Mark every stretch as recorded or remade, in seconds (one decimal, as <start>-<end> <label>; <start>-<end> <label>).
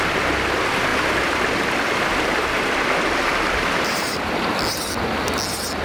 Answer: 0.0-0.9 recorded; 0.9-4.4 remade; 4.4-5.8 recorded